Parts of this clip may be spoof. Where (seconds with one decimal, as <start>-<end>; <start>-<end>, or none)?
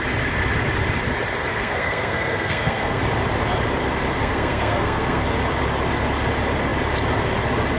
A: 1.5-3.0; 4.2-5.3